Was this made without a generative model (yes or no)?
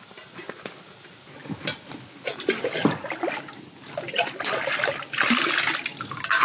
yes